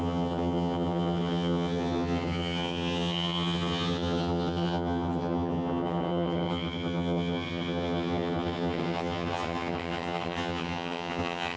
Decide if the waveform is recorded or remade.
remade